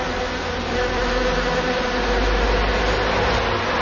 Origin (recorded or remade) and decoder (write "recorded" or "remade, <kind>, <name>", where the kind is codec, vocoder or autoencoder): recorded